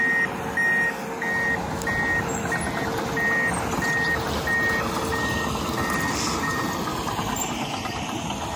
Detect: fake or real real